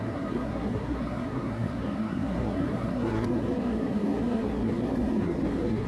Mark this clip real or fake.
fake